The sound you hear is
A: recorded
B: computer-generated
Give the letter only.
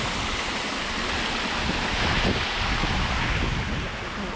A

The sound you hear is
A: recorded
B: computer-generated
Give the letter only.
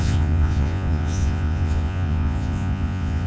B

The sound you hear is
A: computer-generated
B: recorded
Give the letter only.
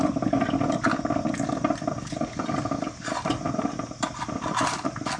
B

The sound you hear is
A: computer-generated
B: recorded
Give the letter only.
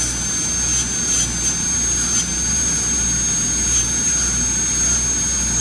B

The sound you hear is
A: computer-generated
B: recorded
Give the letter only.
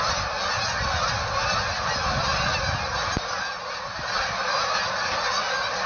B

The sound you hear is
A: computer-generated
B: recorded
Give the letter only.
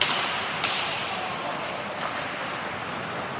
B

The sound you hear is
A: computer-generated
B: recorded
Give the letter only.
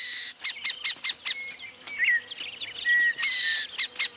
B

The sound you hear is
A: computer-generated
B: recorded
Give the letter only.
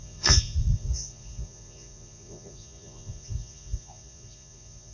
A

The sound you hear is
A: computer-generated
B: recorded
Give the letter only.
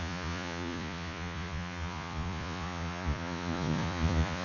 A